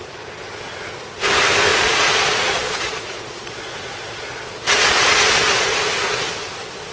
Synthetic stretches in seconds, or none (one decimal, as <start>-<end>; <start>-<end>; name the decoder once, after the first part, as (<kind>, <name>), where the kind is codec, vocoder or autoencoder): 1.7-5.8 (vocoder, Vocos)